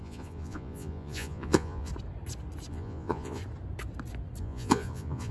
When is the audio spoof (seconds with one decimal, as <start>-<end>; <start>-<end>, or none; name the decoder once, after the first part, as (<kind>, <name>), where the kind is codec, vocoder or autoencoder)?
0.0-1.9 (vocoder, Vocos); 2.7-3.4; 4.4-5.3